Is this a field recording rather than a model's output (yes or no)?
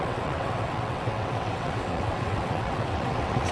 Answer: no